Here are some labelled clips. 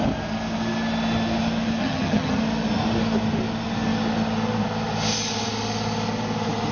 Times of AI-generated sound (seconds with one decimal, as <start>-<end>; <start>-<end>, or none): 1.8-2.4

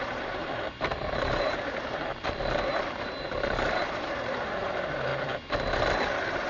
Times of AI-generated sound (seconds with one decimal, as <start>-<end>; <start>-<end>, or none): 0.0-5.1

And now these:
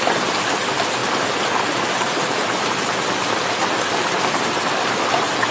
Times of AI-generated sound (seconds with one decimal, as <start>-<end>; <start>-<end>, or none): none

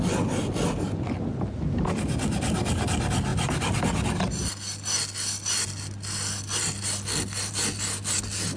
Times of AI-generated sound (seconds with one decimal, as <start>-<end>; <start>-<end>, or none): none